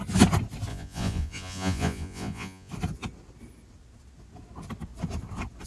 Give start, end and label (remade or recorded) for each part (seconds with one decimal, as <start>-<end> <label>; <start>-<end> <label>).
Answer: 0.0-0.7 recorded; 0.7-2.7 remade; 2.7-5.7 recorded